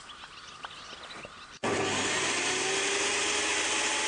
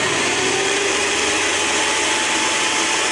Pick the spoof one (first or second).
second